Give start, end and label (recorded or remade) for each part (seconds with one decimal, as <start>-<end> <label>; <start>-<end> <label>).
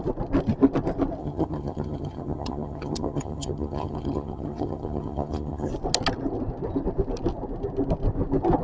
0.0-1.2 recorded; 1.2-5.7 remade; 5.7-8.6 recorded